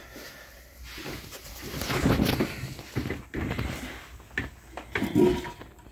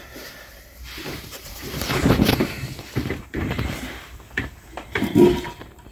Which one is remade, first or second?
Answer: second